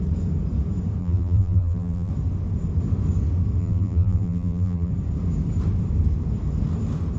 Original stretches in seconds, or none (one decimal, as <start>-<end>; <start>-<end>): 0.0-1.0; 2.1-3.6; 4.9-7.2